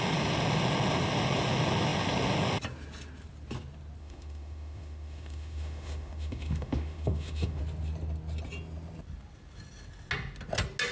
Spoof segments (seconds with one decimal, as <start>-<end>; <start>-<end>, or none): 4.0-7.6